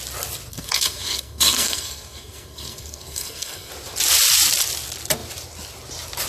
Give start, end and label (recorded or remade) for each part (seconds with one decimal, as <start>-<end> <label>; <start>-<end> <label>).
0.0-0.5 recorded; 0.5-3.7 remade; 3.7-6.3 recorded